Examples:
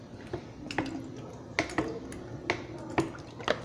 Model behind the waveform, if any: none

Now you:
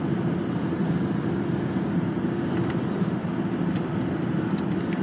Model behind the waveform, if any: none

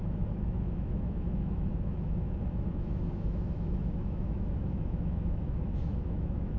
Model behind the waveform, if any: autoencoder, DAC-VAE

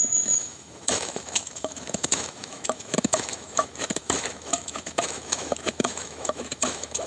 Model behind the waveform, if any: autoencoder, DAC-VAE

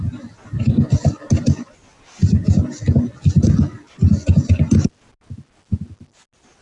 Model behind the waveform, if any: none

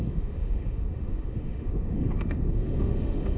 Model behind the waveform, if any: autoencoder, DAC-VAE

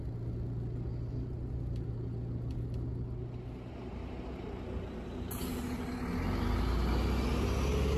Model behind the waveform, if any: none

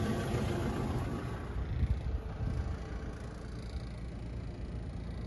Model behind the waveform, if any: none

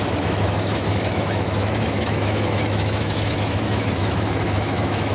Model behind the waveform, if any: autoencoder, DAC-VAE